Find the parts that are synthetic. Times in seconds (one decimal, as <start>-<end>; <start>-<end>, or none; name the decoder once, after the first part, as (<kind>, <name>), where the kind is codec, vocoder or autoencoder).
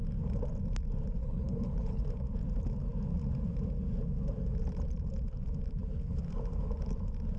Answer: 1.2-2.0 (codec, HILCodec)